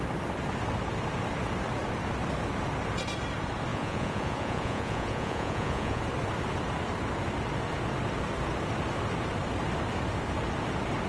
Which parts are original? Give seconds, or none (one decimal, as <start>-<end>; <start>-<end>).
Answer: 0.0-3.7; 6.0-11.1